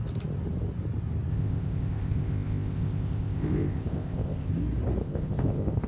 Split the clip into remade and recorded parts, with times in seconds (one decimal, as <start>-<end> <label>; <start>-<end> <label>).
0.0-1.3 recorded; 1.3-4.5 remade; 4.5-5.0 recorded; 5.0-5.9 remade